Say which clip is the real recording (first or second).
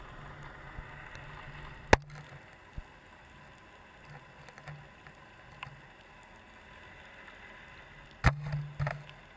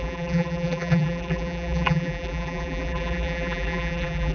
first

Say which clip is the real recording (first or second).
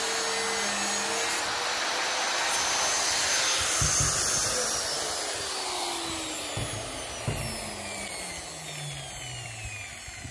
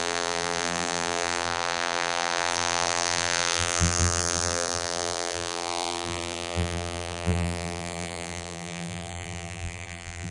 first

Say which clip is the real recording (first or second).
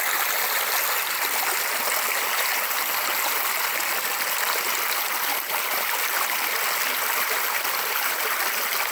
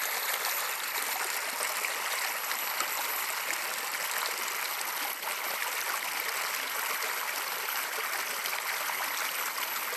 second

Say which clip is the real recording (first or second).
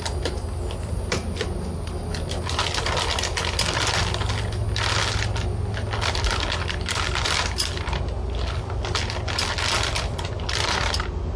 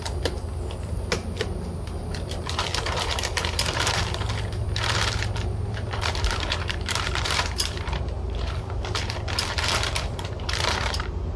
first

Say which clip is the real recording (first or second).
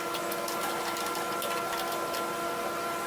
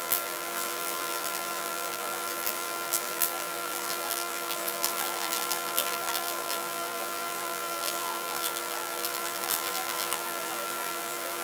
first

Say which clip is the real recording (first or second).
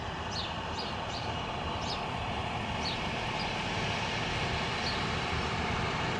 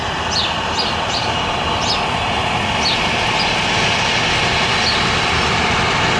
second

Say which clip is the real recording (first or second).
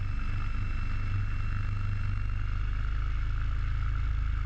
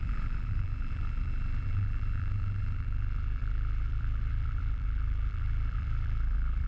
first